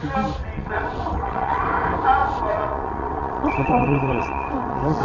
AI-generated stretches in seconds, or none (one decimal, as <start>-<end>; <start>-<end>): 0.4-1.6; 2.2-5.0